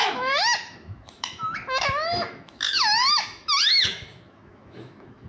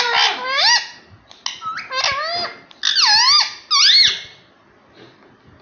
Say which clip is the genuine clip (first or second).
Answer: second